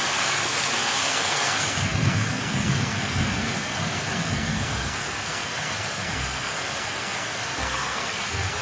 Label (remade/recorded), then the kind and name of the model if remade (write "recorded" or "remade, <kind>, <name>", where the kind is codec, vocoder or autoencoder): remade, codec, SNAC